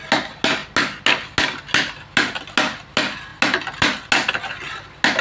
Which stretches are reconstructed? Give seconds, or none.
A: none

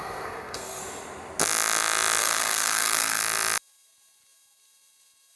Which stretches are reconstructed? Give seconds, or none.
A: 0.0-0.8 (codec, SNAC); 2.2-3.2

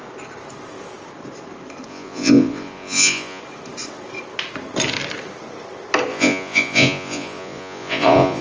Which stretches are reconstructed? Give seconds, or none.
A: 1.9-3.4 (vocoder, Vocos); 6.1-8.4

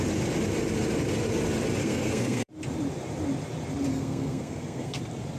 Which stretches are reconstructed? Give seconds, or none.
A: 1.8-2.5 (codec, SNAC); 3.9-5.0

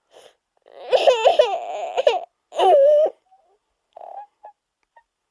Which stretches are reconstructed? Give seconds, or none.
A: 1.3-2.0 (vocoder, BigVGAN v2)